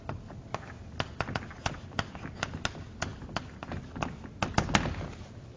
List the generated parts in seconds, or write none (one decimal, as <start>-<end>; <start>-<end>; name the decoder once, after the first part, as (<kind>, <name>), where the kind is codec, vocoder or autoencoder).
none